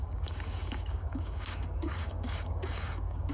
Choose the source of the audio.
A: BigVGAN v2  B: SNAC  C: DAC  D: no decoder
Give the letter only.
C